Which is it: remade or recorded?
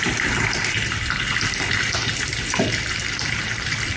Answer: remade